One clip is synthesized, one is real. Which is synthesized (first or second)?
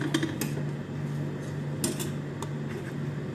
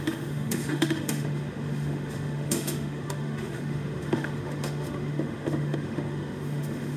second